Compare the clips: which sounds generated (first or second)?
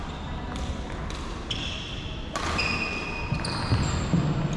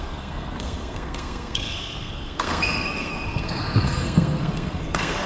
second